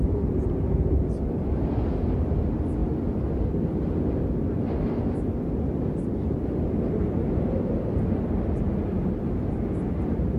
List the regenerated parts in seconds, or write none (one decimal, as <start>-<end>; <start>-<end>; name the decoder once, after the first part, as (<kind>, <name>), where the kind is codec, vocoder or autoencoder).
none